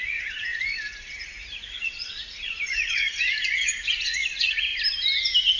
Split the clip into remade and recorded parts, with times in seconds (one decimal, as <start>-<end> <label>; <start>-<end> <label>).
0.0-4.7 remade; 4.7-5.6 recorded